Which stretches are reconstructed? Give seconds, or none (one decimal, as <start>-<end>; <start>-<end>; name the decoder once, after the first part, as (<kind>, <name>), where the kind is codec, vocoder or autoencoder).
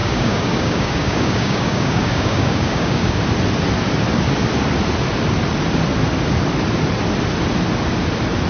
0.0-3.2 (codec, DAC)